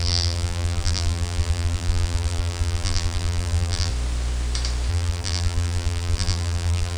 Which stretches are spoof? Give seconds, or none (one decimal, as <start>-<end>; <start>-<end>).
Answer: 0.0-3.9; 4.9-7.0